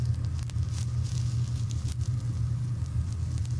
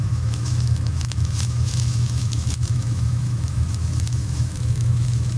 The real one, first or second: first